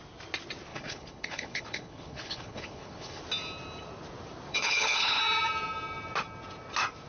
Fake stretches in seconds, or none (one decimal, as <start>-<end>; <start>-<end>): 0.7-3.2; 4.5-5.2